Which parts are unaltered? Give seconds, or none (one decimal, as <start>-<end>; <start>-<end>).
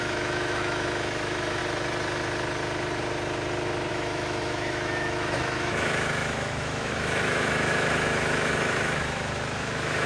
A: 1.6-3.9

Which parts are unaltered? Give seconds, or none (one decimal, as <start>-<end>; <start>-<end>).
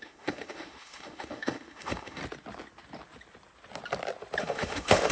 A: 2.2-4.4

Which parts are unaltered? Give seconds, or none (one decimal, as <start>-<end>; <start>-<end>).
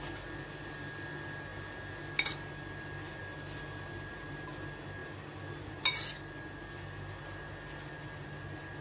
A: 0.0-8.8